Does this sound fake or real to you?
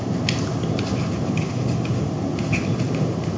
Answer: real